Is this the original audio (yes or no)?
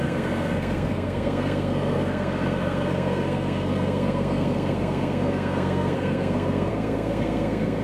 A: no